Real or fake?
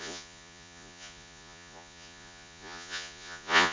fake